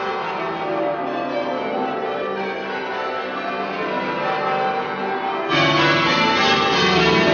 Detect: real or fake real